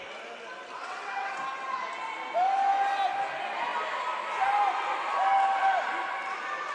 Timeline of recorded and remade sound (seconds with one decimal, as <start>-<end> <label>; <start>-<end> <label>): 0.0-0.8 recorded; 0.8-1.4 remade; 1.4-6.7 recorded